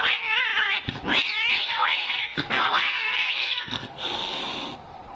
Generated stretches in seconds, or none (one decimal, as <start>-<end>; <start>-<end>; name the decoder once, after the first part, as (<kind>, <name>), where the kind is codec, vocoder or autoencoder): 1.6-4.4 (codec, SNAC)

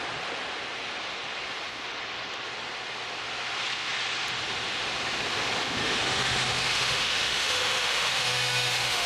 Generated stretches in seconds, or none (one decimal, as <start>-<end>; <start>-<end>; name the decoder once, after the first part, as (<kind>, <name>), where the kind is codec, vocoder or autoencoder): 5.8-9.1 (autoencoder, DAC-VAE)